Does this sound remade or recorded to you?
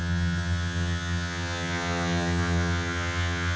remade